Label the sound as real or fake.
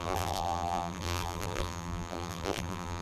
fake